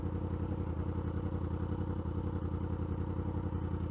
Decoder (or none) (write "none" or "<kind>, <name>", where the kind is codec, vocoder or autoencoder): none